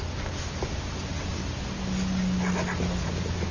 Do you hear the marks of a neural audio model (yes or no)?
no